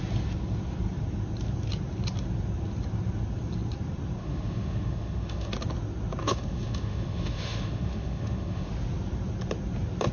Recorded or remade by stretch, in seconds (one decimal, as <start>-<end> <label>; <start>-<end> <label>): 0.0-4.2 recorded; 4.2-5.5 remade; 5.5-6.2 recorded; 6.2-8.7 remade; 8.7-10.1 recorded

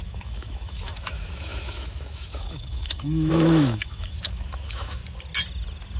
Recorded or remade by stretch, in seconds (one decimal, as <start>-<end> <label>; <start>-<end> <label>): 0.0-5.0 remade; 5.0-6.0 recorded

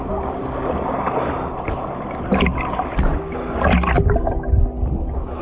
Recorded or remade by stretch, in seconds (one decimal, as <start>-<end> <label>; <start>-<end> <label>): 0.0-5.4 recorded

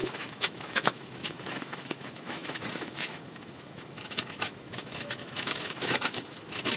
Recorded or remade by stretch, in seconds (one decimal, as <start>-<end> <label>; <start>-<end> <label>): 0.0-6.8 remade

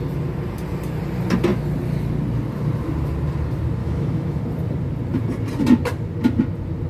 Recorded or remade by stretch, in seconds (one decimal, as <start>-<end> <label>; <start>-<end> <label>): 0.0-3.8 recorded; 3.8-4.4 remade; 4.4-6.9 recorded

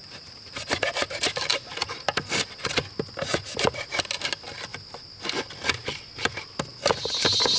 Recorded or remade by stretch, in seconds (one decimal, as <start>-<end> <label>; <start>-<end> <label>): 0.0-7.6 recorded

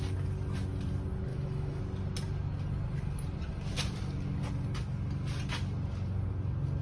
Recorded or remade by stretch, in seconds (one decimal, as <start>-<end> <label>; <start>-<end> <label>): 0.0-1.3 recorded; 1.3-1.8 remade; 1.8-6.8 recorded

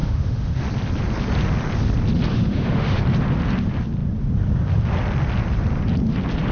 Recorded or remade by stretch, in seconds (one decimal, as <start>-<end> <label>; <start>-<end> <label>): 0.0-0.6 remade; 0.6-2.3 recorded; 2.3-3.0 remade; 3.0-6.5 recorded